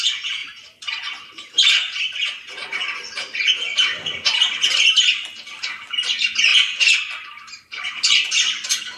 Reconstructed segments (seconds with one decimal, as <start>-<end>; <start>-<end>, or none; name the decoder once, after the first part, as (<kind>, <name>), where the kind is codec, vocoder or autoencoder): 0.4-2.0 (vocoder, BigVGAN v2); 6.5-7.5